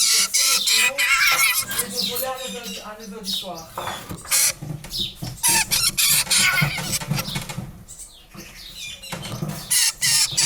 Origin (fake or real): real